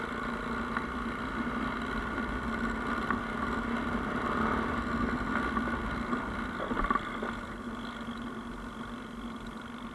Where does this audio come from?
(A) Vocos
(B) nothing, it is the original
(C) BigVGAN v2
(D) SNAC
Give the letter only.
B